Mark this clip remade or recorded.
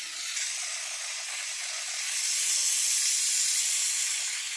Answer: recorded